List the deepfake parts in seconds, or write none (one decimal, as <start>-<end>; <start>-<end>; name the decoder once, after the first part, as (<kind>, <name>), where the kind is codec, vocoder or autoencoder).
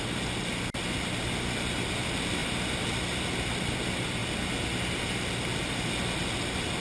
none